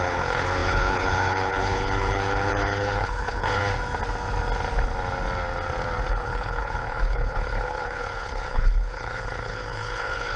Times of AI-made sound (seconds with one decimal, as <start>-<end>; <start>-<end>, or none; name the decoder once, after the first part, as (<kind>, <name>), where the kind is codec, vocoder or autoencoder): 0.0-3.6 (codec, HILCodec); 6.1-10.4